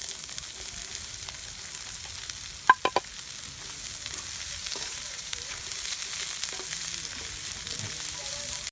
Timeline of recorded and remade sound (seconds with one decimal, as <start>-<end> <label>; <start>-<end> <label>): 0.0-4.6 recorded; 4.6-5.6 remade; 5.6-8.7 recorded